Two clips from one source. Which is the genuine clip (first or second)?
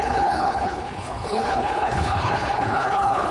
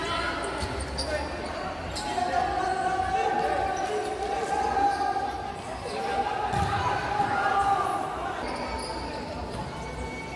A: second